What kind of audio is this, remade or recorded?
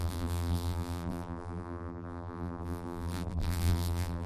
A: remade